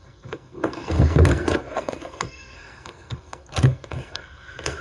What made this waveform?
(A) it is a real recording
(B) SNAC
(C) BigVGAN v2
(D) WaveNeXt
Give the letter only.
B